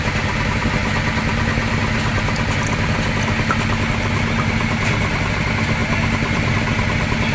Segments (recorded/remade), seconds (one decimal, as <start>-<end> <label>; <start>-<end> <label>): 0.0-7.3 recorded